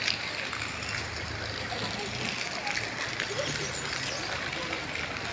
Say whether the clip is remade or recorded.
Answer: recorded